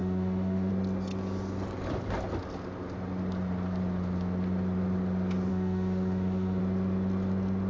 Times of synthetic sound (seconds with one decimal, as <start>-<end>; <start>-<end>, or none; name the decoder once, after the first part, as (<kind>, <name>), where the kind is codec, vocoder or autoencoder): 0.0-0.7 (autoencoder, DAC-VAE); 5.5-6.6